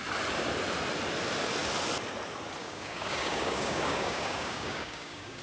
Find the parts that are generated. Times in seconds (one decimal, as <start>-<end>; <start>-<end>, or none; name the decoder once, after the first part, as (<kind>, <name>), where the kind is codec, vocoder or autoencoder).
2.6-5.4 (codec, DAC)